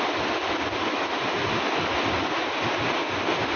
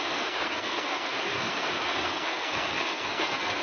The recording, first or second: first